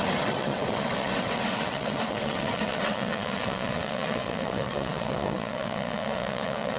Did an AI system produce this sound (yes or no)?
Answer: yes